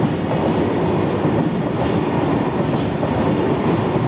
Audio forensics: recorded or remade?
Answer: remade